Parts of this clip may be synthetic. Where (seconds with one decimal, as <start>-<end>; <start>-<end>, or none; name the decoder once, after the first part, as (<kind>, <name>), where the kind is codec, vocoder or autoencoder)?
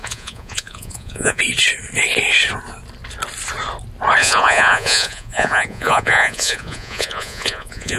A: 0.0-1.4 (vocoder, Vocos); 4.2-8.0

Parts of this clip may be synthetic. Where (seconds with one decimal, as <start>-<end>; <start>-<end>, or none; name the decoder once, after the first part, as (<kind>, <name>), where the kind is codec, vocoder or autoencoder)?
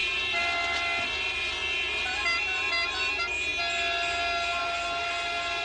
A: none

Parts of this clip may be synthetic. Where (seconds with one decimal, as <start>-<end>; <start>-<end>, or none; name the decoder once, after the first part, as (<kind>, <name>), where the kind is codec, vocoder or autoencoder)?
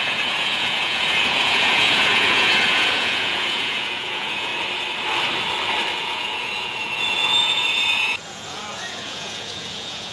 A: 0.0-4.5 (vocoder, Vocos); 6.0-10.1